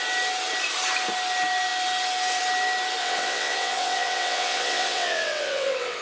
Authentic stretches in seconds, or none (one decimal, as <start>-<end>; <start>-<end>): 0.0-3.0